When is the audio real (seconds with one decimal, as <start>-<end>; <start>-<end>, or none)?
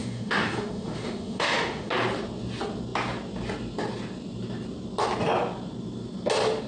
1.9-6.7